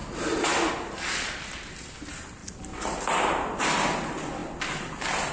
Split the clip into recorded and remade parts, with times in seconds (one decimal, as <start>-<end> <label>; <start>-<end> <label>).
0.0-5.3 recorded